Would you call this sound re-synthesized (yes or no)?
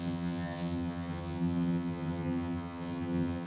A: yes